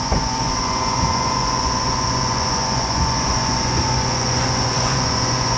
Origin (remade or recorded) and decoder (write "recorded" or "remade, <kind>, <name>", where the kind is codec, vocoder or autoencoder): remade, vocoder, Vocos